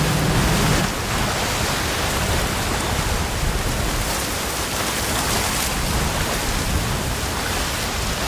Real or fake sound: real